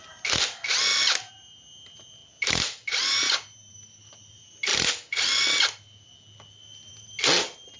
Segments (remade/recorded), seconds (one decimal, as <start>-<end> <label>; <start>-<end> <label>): 0.0-7.8 recorded